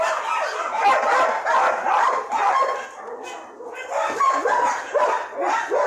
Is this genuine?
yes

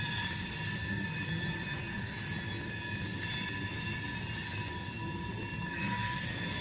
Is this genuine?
yes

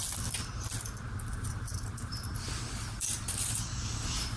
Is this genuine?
yes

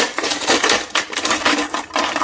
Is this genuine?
no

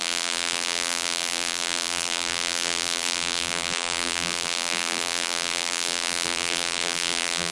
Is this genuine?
no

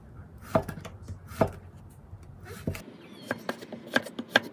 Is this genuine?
yes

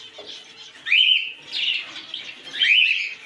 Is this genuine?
yes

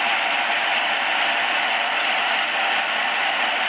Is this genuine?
no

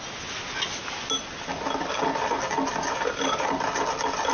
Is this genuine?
yes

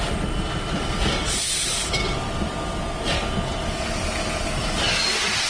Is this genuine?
yes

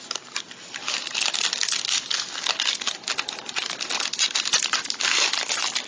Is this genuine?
yes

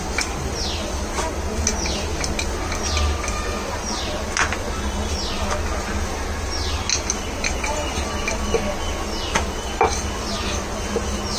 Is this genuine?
yes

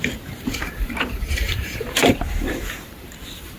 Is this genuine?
no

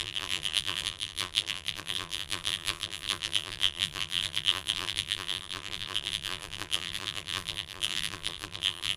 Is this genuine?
no